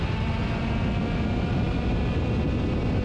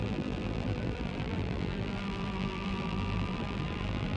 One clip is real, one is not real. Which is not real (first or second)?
second